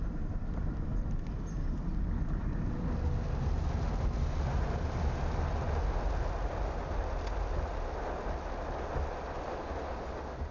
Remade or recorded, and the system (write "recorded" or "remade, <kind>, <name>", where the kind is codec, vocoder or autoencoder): recorded